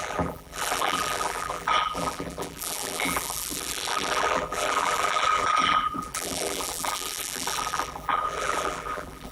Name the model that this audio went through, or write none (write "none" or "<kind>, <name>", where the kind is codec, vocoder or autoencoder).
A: vocoder, BigVGAN v2